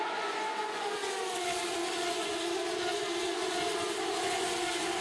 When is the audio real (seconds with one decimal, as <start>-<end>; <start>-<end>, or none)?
none